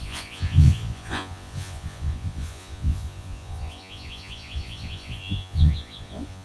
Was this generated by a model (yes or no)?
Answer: yes